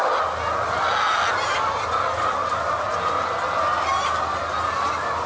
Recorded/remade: recorded